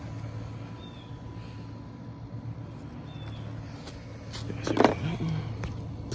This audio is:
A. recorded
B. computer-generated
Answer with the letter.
A